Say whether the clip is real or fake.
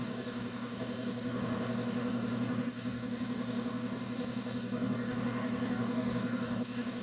fake